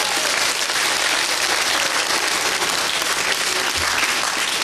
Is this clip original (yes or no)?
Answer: yes